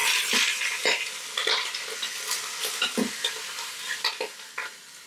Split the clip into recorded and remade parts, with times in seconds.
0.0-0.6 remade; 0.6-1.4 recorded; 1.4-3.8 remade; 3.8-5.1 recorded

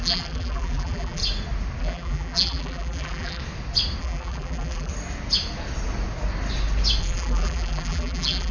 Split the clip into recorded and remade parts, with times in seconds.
0.0-1.2 remade; 1.2-1.8 recorded; 1.8-3.4 remade; 3.4-4.0 recorded; 4.0-4.9 remade; 4.9-7.0 recorded; 7.0-8.5 remade

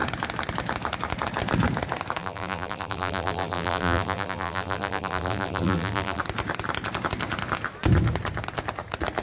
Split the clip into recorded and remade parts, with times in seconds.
0.0-2.2 recorded; 2.2-6.2 remade; 6.2-9.2 recorded